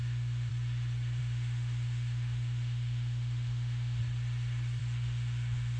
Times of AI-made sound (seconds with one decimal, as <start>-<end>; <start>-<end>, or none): 0.0-0.5; 1.2-4.0; 4.8-5.8